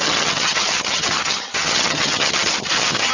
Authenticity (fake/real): fake